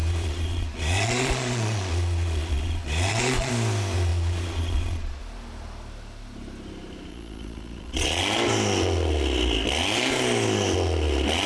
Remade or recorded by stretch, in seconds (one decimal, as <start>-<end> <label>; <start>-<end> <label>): 0.0-3.5 remade; 3.5-4.1 recorded; 4.1-5.2 remade; 5.2-7.1 recorded; 7.1-8.2 remade; 8.2-11.5 recorded